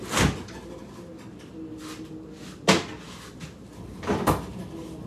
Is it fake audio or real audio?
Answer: real